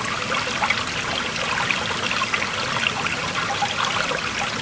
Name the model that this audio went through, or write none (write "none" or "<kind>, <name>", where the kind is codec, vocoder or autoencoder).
none